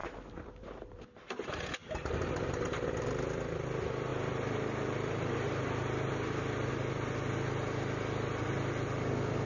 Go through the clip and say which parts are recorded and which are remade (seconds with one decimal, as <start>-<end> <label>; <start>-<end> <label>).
0.0-1.0 remade; 1.0-1.8 recorded; 1.8-2.4 remade; 2.4-4.1 recorded; 4.1-6.7 remade; 6.7-9.5 recorded